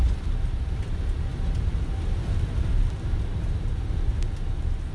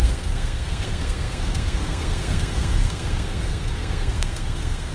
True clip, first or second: first